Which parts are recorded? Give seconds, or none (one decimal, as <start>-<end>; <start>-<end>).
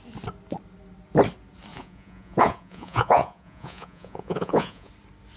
0.0-1.7; 4.9-5.4